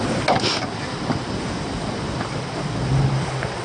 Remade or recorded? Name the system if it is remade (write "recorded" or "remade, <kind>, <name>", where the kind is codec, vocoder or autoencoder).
recorded